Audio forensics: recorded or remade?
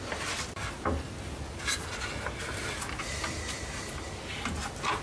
recorded